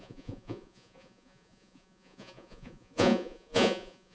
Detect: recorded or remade remade